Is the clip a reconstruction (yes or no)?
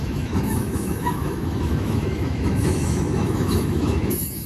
yes